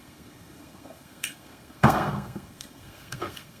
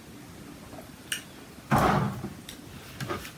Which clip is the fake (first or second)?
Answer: first